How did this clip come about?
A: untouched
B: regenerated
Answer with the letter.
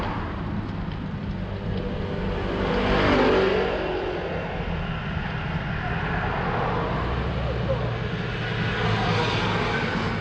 A